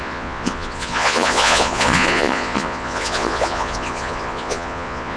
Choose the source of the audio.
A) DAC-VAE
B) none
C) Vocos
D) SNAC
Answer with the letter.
C